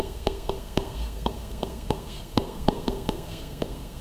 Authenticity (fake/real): fake